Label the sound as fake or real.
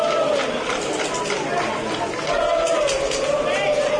real